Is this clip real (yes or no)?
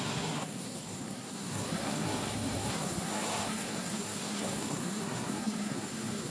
no